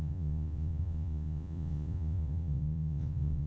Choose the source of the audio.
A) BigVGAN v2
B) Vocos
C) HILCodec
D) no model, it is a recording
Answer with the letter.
B